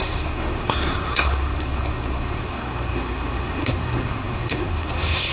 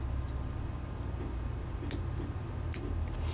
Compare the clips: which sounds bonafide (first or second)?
second